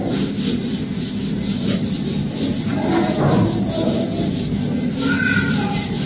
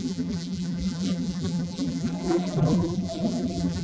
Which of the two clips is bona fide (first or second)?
first